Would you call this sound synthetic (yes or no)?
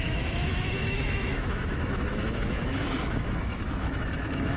yes